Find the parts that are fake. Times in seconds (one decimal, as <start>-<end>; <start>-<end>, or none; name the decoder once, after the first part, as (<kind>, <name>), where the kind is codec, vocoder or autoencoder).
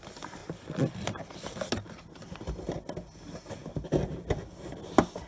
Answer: none